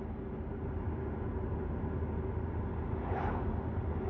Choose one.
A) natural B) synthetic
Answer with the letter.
A